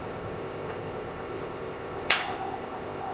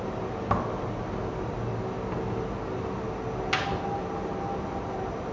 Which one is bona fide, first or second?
second